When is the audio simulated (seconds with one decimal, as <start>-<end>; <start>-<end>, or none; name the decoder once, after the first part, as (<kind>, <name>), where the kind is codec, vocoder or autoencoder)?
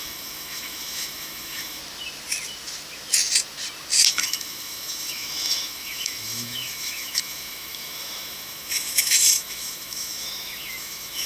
0.0-1.8 (autoencoder, DAC-VAE); 4.1-11.3